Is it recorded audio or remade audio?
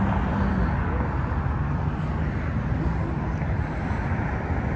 recorded